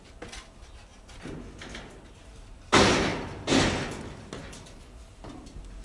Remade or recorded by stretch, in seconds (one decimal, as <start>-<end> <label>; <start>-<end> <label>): 0.0-5.8 recorded

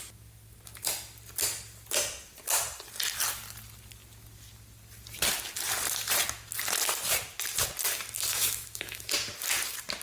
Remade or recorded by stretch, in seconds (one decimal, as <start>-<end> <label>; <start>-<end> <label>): 0.0-8.3 recorded; 8.3-9.1 remade; 9.1-10.0 recorded